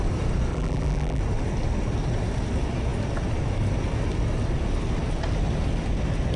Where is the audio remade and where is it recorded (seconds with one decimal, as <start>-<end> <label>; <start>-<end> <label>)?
0.0-0.5 recorded; 0.5-1.2 remade; 1.2-6.4 recorded